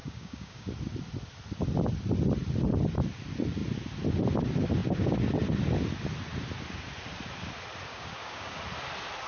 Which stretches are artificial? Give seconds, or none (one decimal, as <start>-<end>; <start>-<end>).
0.0-0.7; 7.9-8.6